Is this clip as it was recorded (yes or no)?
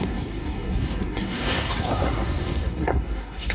no